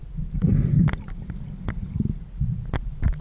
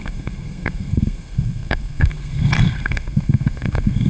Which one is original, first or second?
first